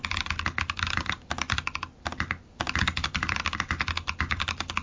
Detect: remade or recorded recorded